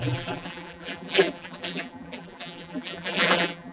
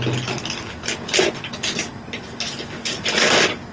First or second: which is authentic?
second